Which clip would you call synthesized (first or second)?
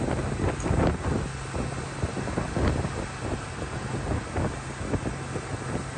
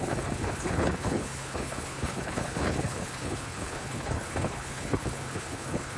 second